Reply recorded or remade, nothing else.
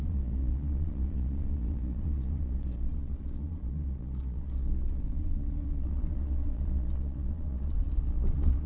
remade